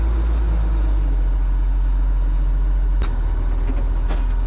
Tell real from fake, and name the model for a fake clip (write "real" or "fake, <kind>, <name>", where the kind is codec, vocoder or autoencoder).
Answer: real